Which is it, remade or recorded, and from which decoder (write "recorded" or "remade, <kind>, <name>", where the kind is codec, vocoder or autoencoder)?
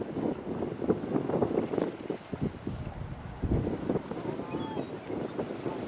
recorded